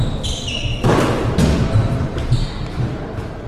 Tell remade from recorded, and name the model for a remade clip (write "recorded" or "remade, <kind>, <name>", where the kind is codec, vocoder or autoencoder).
recorded